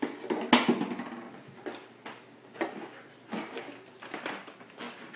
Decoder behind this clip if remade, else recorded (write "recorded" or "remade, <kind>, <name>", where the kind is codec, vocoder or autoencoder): recorded